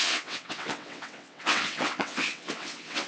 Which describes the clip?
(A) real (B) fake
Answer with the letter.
B